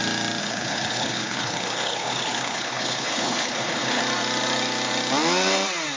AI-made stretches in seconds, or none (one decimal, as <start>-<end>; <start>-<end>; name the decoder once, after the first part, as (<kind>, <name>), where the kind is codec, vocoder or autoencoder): 0.4-4.0 (codec, HILCodec)